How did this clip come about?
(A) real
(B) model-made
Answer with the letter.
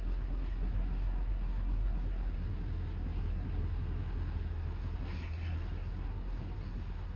B